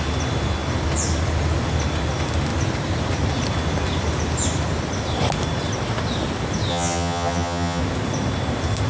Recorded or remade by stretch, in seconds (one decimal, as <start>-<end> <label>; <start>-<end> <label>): 0.0-6.7 recorded; 6.7-7.8 remade; 7.8-8.9 recorded

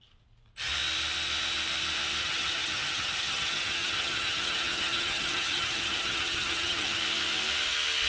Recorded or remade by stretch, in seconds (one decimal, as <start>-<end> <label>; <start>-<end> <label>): 0.0-2.2 recorded; 2.2-7.0 remade; 7.0-8.1 recorded

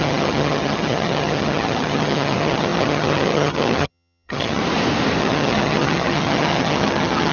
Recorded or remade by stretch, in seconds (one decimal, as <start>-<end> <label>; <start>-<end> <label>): 0.0-4.6 remade; 4.6-5.2 recorded; 5.2-7.3 remade

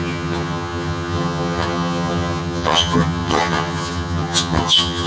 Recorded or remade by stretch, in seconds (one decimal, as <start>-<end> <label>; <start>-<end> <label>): 0.0-5.1 remade